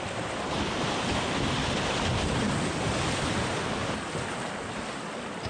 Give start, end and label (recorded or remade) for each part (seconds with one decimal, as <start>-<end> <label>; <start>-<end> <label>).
0.0-5.5 recorded